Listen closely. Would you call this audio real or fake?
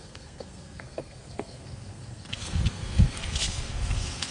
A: fake